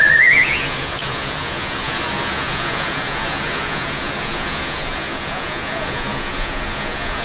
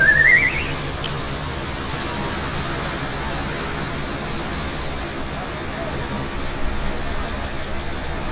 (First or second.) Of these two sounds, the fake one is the first